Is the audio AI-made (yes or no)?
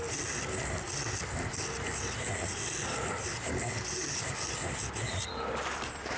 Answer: no